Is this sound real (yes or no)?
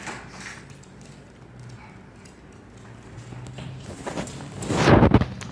yes